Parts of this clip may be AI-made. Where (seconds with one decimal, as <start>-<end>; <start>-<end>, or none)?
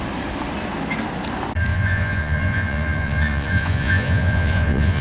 1.7-5.0